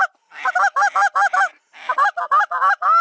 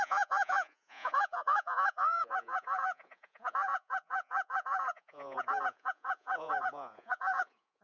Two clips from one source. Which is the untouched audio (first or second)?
first